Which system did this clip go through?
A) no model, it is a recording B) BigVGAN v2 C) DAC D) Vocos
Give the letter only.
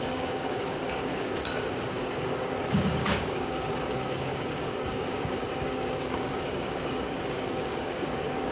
C